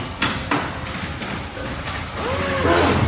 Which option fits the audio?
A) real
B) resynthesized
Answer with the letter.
A